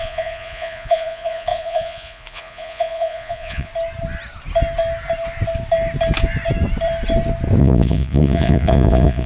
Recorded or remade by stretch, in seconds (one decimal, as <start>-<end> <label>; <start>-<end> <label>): 0.0-3.7 remade; 3.7-7.6 recorded; 7.6-9.3 remade